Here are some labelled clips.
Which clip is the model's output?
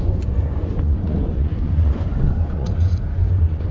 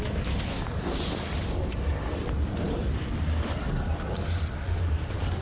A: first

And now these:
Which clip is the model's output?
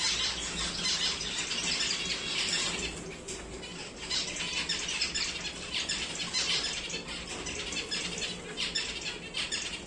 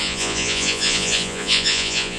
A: second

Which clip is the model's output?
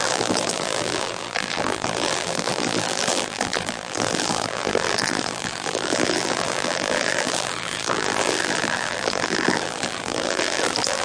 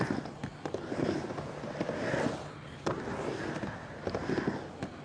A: first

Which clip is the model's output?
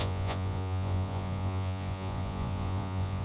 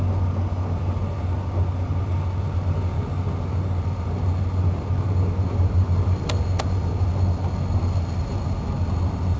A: first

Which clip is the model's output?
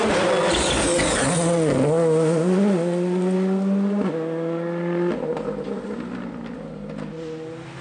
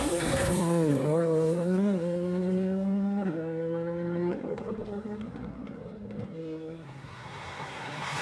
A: second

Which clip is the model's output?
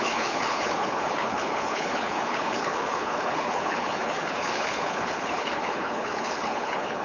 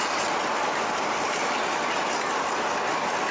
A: first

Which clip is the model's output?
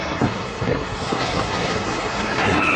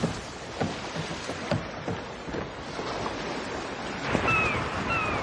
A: first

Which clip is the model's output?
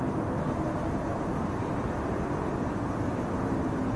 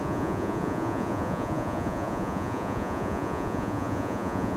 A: second